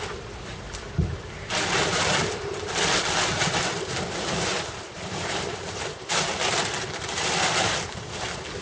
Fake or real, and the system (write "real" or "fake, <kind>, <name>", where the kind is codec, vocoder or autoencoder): fake, vocoder, BigVGAN v2